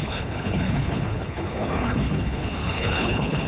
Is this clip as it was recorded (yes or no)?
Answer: no